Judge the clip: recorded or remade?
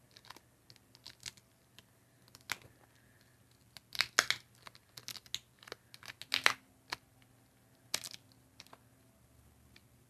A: recorded